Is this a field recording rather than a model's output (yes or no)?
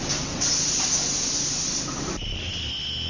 yes